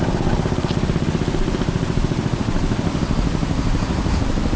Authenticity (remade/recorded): recorded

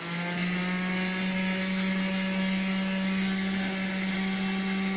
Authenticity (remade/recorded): recorded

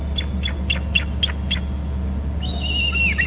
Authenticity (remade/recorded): recorded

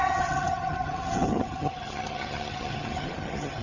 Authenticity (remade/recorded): remade